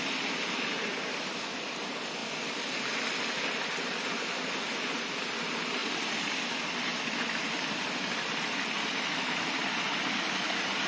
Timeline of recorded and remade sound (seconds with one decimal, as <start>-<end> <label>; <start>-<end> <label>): 0.0-10.9 recorded